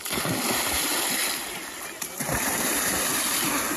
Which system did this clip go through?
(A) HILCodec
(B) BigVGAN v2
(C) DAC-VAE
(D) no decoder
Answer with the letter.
D